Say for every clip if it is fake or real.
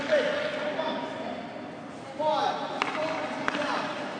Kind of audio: real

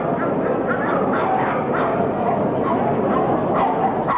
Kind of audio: real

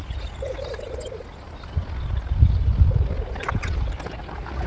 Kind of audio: real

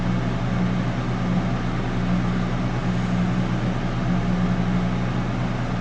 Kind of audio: real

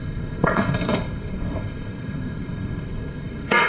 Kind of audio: fake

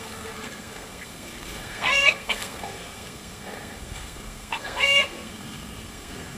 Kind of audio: fake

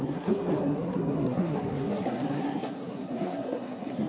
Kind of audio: fake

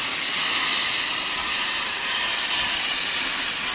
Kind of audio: real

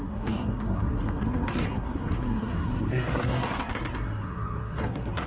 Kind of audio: fake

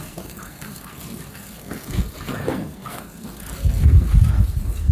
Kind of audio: fake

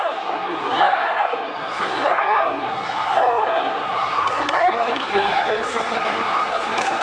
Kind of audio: fake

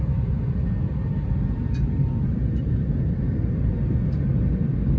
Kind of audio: real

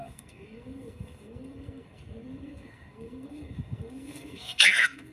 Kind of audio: fake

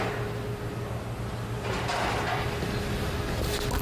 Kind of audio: real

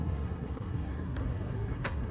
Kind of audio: fake